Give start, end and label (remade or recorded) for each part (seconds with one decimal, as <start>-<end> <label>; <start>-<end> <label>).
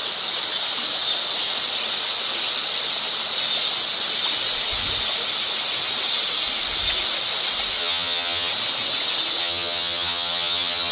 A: 0.0-7.8 recorded; 7.8-8.5 remade; 8.5-9.4 recorded; 9.4-10.9 remade